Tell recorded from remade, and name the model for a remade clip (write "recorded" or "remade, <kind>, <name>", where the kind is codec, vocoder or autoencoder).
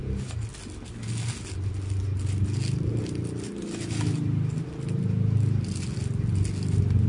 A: recorded